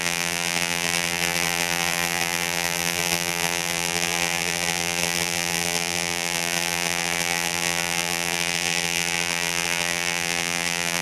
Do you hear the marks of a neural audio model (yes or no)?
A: yes